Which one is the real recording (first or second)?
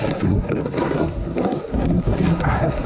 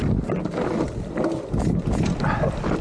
second